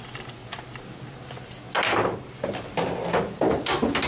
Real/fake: real